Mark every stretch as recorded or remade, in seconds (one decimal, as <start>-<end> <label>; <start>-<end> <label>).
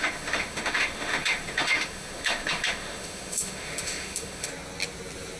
0.0-4.5 remade; 4.5-5.4 recorded